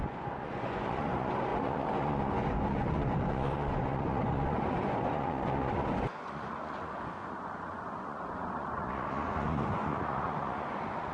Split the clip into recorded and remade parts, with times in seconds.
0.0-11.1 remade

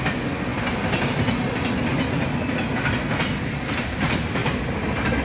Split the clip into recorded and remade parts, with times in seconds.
0.0-5.2 recorded

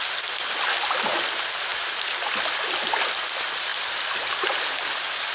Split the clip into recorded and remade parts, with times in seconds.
0.0-5.3 recorded

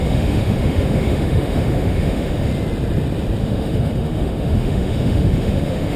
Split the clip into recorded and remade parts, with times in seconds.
0.0-2.5 remade; 2.5-3.4 recorded; 3.4-6.0 remade

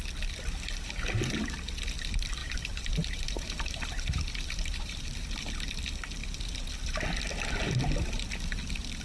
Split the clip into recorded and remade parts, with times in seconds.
0.0-2.4 recorded; 2.4-5.3 remade; 5.3-9.0 recorded

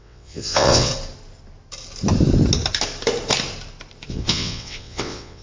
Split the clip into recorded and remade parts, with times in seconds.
0.0-0.9 remade; 0.9-4.1 recorded; 4.1-5.4 remade